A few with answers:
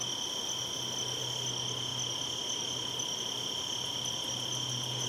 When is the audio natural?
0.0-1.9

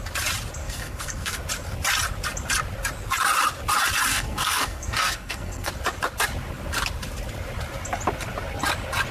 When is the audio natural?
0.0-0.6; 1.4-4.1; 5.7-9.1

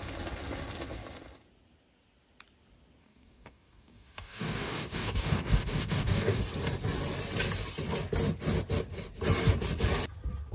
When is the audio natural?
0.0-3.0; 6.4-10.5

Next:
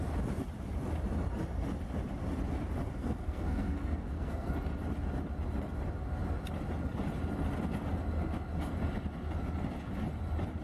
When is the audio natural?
0.0-3.0; 4.5-10.6

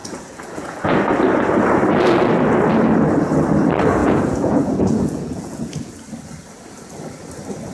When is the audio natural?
1.0-4.0; 5.9-7.7

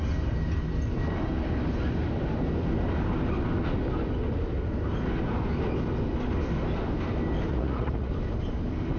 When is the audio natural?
0.0-7.5; 8.1-9.0

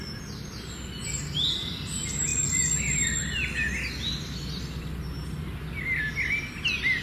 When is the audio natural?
0.0-7.0